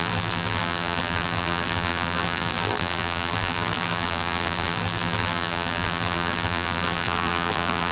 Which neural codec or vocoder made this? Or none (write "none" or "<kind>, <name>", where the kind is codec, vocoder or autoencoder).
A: vocoder, BigVGAN v2